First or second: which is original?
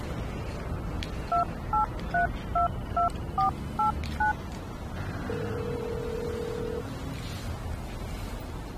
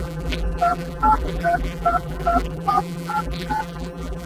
first